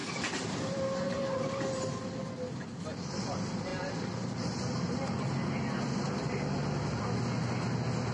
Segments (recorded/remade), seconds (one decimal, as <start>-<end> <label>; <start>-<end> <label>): 0.0-8.1 recorded